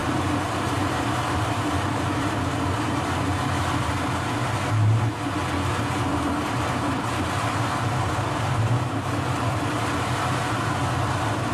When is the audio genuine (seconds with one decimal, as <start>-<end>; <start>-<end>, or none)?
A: 4.1-6.1; 10.7-11.5